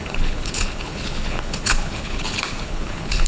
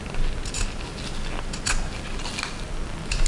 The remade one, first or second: first